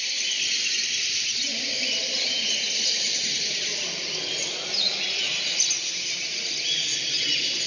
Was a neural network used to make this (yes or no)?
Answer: no